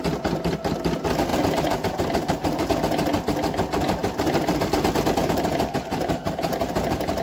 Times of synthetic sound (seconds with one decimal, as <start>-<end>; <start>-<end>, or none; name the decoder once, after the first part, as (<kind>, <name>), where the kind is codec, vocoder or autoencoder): 1.3-2.7 (vocoder, BigVGAN v2); 4.0-4.8; 5.2-7.2